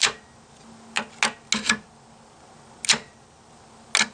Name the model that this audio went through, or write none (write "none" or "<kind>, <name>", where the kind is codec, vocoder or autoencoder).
none